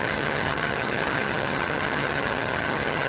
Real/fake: fake